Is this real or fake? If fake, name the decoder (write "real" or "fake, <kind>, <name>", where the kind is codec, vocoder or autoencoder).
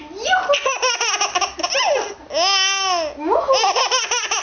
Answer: real